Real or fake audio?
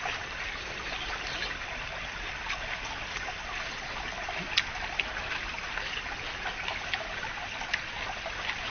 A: real